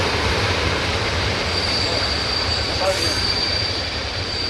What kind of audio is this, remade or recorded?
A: remade